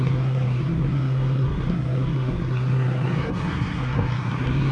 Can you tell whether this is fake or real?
fake